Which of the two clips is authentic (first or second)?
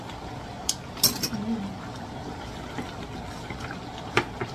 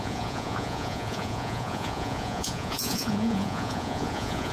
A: first